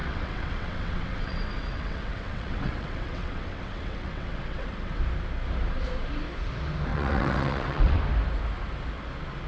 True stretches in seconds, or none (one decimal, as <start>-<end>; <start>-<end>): 5.0-6.9; 8.0-9.5